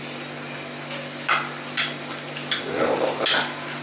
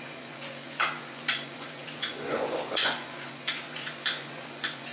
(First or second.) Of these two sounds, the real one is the first